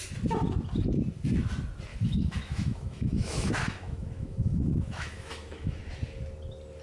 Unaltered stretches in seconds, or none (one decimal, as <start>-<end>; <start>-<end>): 0.0-1.9; 5.8-6.8